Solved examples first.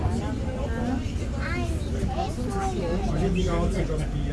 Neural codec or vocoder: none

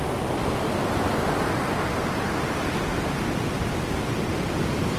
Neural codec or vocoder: none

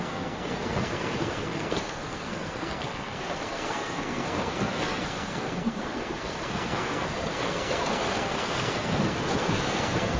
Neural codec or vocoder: codec, SNAC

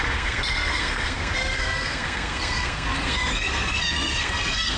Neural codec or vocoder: codec, SNAC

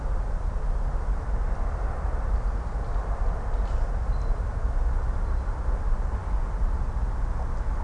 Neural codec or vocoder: none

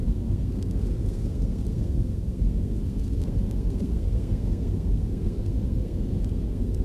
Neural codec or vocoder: codec, SNAC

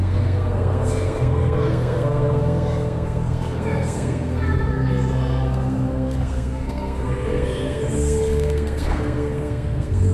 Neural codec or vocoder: codec, SNAC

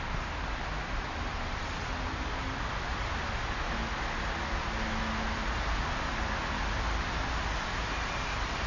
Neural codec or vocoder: none